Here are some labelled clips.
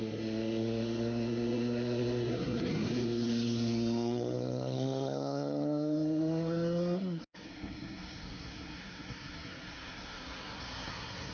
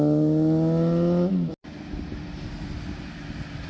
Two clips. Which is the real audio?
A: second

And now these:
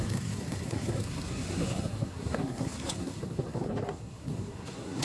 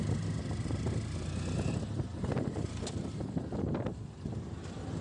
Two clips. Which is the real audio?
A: second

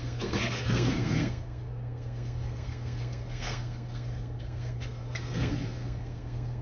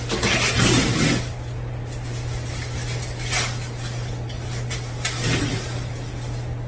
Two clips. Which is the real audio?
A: second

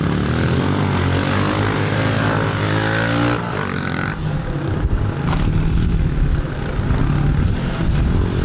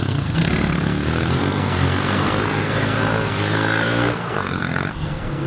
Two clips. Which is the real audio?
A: first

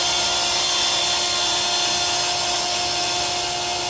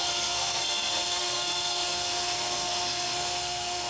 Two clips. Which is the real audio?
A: first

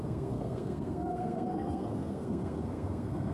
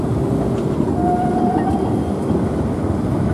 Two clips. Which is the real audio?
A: second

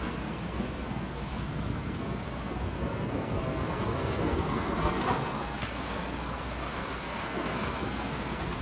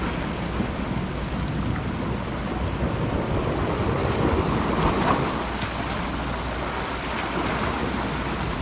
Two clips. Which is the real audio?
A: second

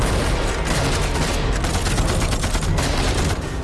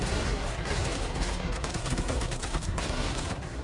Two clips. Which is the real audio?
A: first